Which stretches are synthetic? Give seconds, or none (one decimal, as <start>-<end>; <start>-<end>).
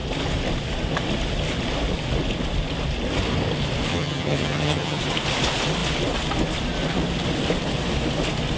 3.9-5.0